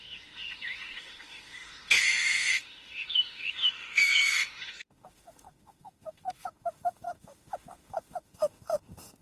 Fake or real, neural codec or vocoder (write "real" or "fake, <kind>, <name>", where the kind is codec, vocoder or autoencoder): fake, autoencoder, DAC-VAE